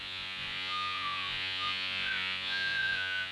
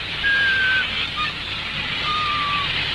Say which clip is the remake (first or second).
first